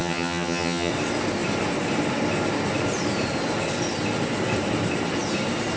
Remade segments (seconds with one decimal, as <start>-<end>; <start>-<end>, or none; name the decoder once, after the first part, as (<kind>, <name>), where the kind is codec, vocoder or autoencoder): 0.0-0.9 (vocoder, HiFi-GAN)